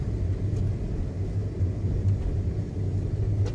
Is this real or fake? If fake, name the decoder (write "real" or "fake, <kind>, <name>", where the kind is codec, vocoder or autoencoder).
real